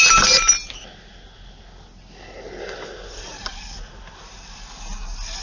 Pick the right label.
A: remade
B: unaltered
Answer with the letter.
B